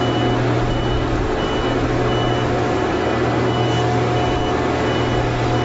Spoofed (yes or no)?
no